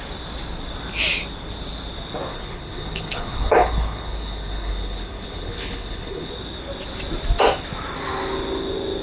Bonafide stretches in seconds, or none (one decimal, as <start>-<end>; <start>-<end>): 0.0-2.3; 6.3-9.0